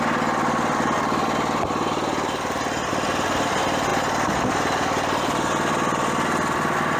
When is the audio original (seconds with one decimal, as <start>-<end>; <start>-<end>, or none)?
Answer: 0.0-7.0